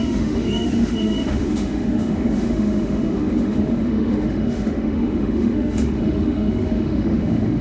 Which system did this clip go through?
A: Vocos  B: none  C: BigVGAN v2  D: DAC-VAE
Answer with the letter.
D